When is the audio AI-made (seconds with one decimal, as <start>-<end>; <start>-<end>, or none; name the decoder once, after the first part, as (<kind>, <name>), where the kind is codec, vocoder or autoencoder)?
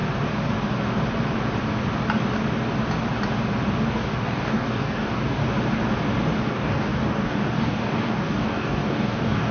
3.9-5.4 (codec, DAC); 6.5-9.5